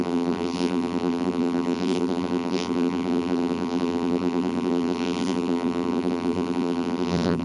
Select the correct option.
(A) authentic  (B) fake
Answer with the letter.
B